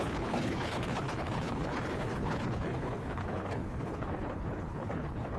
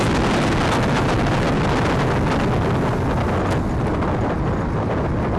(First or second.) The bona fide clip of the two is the second